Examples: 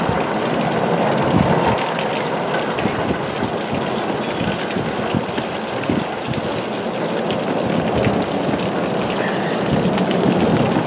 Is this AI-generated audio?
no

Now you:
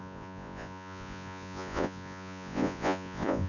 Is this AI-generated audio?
yes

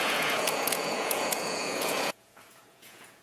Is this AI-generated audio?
yes